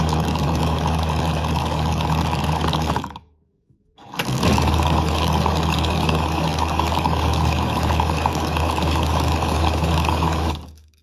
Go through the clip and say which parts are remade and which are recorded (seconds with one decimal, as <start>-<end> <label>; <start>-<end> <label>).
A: 0.0-11.0 remade